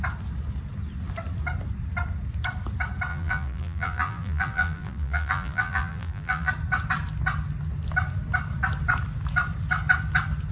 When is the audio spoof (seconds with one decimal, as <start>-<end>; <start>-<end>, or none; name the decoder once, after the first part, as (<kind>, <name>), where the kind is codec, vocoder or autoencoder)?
3.1-6.5 (vocoder, BigVGAN v2)